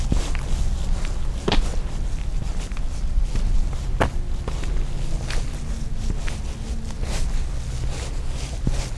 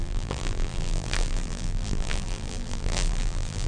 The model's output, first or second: second